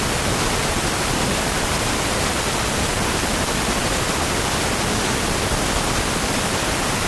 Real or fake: real